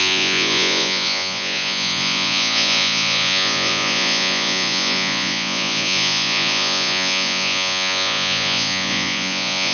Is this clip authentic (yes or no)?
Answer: no